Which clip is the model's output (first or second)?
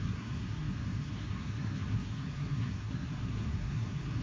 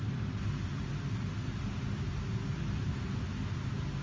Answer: first